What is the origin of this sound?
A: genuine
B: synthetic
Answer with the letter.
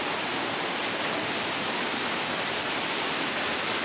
A